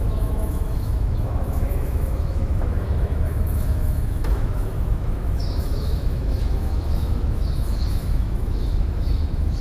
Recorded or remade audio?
remade